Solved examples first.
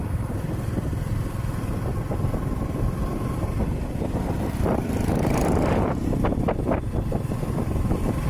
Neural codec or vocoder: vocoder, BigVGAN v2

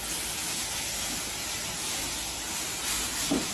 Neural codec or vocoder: none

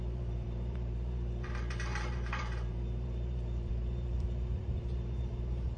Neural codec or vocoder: vocoder, BigVGAN v2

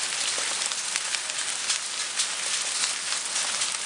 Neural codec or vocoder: none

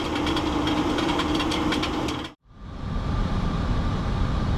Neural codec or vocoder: vocoder, BigVGAN v2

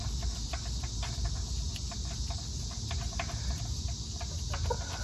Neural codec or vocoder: none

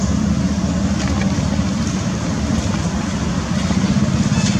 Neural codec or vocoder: none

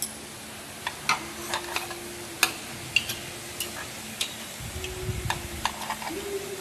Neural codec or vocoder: none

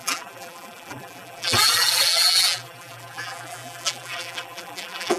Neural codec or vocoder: vocoder, BigVGAN v2